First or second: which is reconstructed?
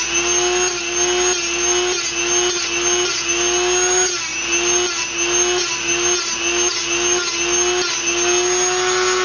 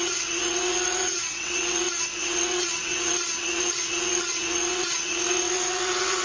second